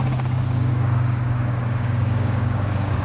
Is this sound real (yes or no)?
no